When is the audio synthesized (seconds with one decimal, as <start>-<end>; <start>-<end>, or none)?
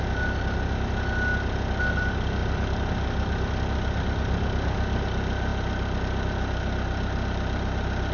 none